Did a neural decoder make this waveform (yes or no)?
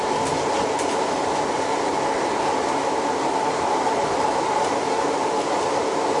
no